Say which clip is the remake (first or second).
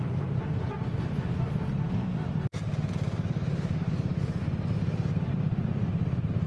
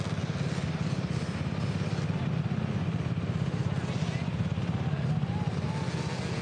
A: first